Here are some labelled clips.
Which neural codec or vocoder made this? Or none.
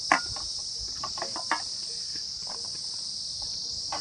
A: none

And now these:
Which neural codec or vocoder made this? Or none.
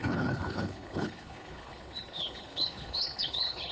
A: codec, HILCodec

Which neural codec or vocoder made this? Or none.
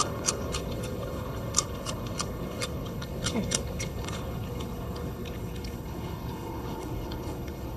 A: codec, HILCodec